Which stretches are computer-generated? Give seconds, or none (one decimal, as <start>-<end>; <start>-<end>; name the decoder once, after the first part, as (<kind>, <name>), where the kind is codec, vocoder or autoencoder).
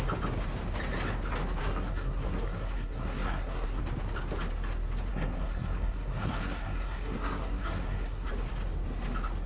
1.6-3.8 (codec, SNAC); 5.1-8.3